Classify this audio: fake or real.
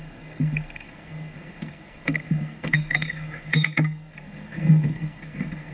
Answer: fake